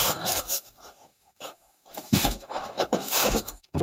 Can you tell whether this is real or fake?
fake